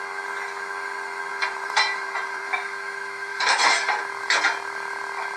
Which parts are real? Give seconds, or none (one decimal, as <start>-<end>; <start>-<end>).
0.0-1.3; 2.4-3.3; 3.8-5.4